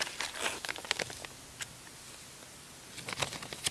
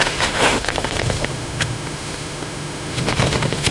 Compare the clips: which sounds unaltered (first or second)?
first